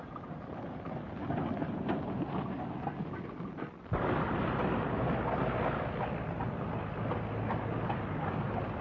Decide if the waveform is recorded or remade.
recorded